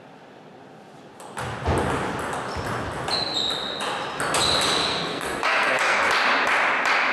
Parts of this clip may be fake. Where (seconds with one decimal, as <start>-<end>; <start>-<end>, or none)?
4.8-6.1